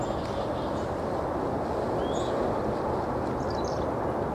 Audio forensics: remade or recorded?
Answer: recorded